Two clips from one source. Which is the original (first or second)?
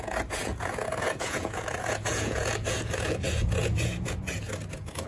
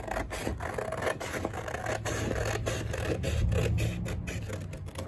second